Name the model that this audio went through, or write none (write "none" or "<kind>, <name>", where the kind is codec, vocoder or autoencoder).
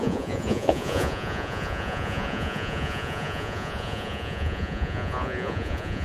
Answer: vocoder, Vocos